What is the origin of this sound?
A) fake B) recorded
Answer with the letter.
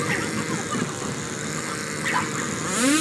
B